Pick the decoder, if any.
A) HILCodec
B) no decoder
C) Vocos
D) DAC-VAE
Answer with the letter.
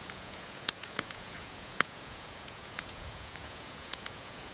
C